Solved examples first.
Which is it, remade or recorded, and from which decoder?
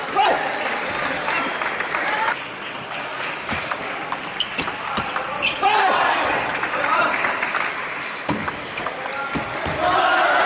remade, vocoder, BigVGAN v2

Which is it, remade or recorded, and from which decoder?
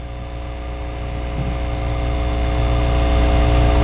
recorded